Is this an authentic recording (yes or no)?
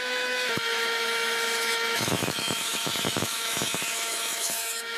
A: no